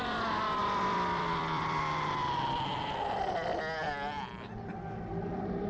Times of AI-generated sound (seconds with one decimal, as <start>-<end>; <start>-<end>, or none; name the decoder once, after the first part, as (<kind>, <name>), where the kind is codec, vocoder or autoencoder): 0.6-1.8 (vocoder, BigVGAN v2); 2.7-3.3